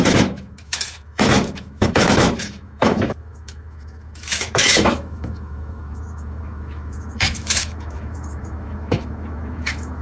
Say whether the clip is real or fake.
fake